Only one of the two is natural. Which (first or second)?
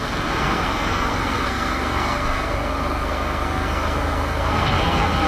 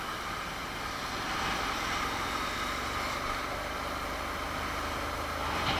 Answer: second